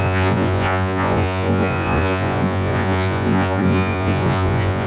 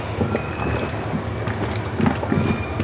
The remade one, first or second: first